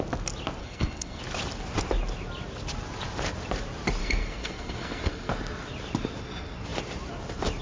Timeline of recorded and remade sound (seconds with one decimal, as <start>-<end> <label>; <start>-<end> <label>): 0.0-0.6 recorded; 0.6-1.2 remade; 1.2-4.0 recorded; 4.0-5.3 remade; 5.3-7.6 recorded